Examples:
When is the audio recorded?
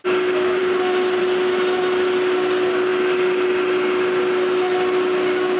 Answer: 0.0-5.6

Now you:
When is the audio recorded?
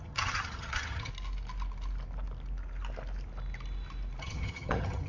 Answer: 1.1-4.2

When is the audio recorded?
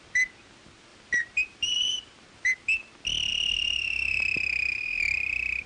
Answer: 0.0-0.9; 2.3-3.3; 4.2-5.7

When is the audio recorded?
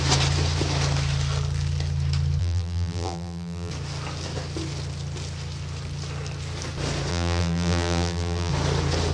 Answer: 0.0-2.4; 3.7-7.1; 8.5-9.1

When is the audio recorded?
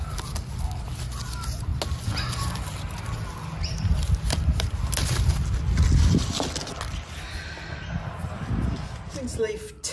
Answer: 0.0-9.9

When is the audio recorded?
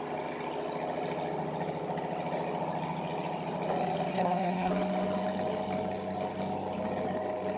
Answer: 0.0-4.1; 4.7-7.6